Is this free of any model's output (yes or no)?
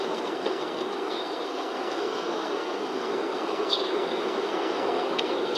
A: no